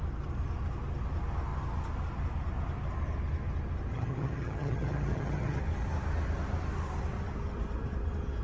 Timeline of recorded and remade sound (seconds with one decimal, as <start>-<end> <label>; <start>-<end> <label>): 0.0-3.9 recorded; 3.9-5.6 remade; 5.6-8.4 recorded